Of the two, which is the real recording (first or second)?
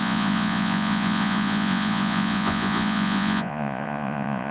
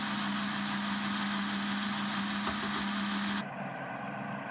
second